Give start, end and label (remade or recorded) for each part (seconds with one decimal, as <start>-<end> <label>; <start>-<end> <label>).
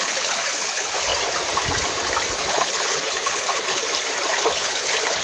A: 0.0-1.1 remade; 1.1-2.3 recorded; 2.3-3.8 remade; 3.8-4.3 recorded; 4.3-5.2 remade